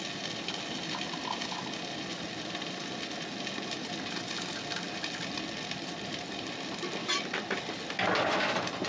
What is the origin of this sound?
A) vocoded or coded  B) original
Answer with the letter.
B